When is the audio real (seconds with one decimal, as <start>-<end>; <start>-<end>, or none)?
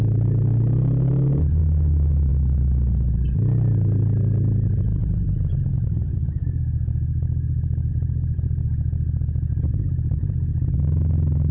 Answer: 0.0-5.7; 7.9-11.5